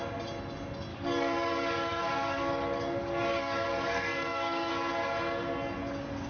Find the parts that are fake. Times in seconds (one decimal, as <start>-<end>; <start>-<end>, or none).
0.9-4.7